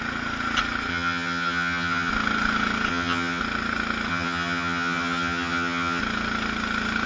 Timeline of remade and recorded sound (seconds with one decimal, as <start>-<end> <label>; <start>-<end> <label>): 0.0-0.9 recorded; 0.9-2.1 remade; 2.1-2.9 recorded; 2.9-3.4 remade; 3.4-4.1 recorded; 4.1-6.0 remade; 6.0-7.1 recorded

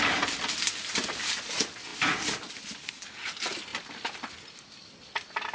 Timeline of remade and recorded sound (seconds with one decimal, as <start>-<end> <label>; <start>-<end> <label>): 0.0-5.5 recorded

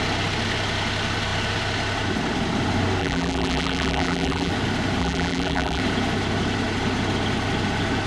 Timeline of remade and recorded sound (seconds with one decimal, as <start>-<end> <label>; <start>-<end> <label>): 0.0-3.0 recorded; 3.0-4.5 remade; 4.5-5.0 recorded; 5.0-5.8 remade; 5.8-8.1 recorded

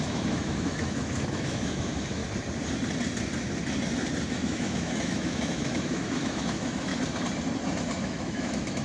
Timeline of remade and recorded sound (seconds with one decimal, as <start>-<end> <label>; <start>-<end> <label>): 0.0-2.2 remade; 2.2-4.3 recorded; 4.3-6.9 remade; 6.9-8.0 recorded; 8.0-8.8 remade

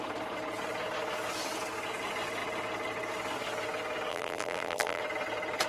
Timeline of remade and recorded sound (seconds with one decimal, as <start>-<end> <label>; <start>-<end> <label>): 0.0-4.1 recorded; 4.1-5.0 remade; 5.0-5.7 recorded

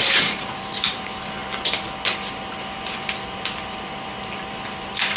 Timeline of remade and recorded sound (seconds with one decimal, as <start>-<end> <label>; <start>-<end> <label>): 0.0-1.4 remade; 1.4-2.2 recorded; 2.2-5.2 remade

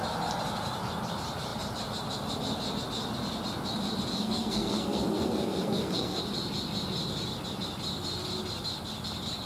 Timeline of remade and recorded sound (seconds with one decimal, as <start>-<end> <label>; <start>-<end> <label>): 0.0-4.1 recorded; 4.1-6.2 remade; 6.2-9.5 recorded